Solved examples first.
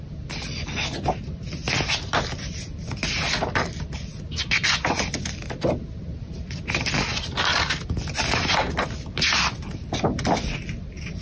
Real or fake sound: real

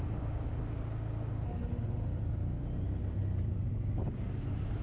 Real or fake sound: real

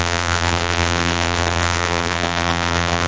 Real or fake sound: fake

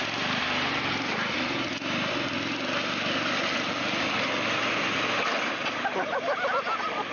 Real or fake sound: real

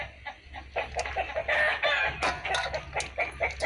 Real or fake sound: real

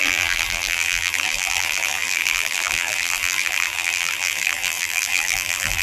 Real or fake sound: fake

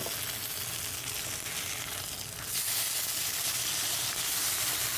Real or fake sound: real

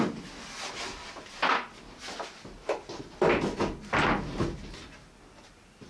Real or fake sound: real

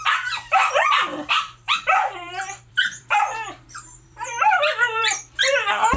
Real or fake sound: fake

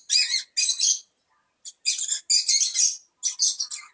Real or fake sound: real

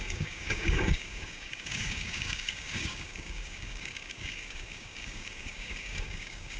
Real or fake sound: fake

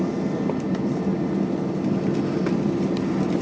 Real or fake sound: real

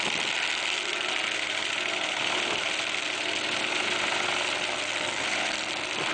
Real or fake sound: real